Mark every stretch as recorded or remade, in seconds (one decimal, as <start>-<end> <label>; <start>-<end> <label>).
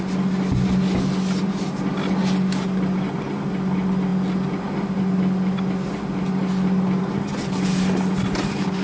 0.0-8.8 recorded